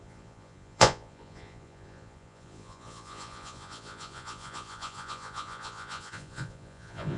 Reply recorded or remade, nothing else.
remade